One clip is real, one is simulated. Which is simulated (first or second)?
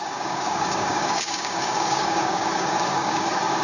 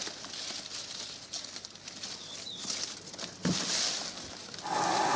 first